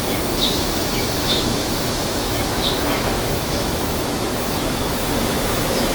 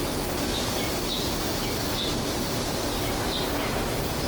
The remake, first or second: first